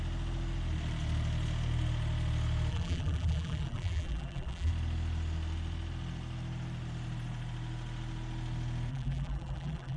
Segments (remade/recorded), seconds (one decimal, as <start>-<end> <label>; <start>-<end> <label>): 0.0-2.7 recorded; 2.7-4.7 remade; 4.7-8.9 recorded; 8.9-10.0 remade

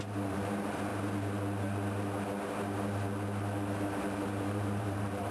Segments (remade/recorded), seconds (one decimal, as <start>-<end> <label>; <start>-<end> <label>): 0.0-0.9 remade; 0.9-4.0 recorded; 4.0-5.3 remade

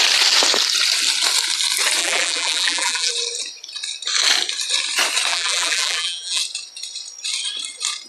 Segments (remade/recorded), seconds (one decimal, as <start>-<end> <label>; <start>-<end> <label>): 0.0-2.0 recorded; 2.0-3.1 remade; 3.1-5.3 recorded; 5.3-6.4 remade; 6.4-8.1 recorded

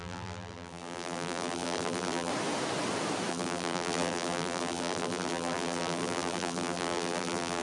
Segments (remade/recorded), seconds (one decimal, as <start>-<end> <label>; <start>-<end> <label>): 0.0-2.3 remade; 2.3-3.3 recorded; 3.3-7.6 remade

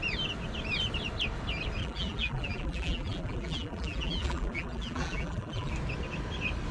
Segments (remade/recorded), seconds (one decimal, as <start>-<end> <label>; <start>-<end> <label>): 0.0-1.8 recorded; 1.8-5.7 remade; 5.7-6.7 recorded

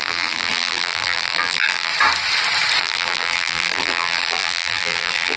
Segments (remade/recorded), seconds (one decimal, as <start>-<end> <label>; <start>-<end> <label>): 0.0-1.9 remade; 1.9-2.8 recorded; 2.8-5.4 remade

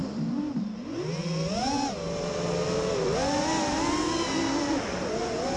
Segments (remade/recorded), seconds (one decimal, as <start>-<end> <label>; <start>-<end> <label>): 0.0-5.6 recorded